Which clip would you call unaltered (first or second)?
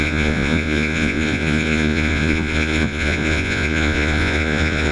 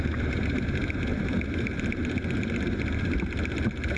second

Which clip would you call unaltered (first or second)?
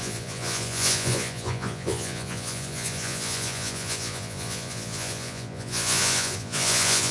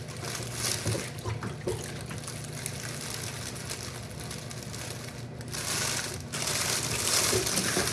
second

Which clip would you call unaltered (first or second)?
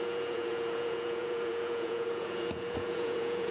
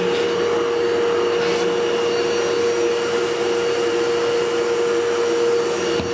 second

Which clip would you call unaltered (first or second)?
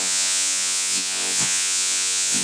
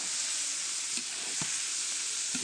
second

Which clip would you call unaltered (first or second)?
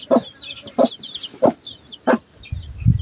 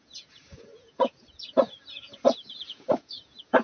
first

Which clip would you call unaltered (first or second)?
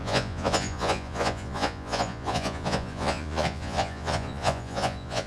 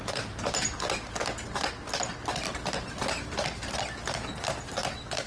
second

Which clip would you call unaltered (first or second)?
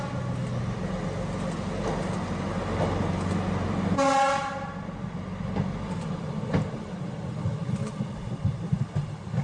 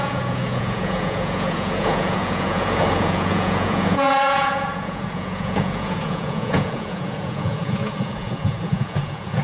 first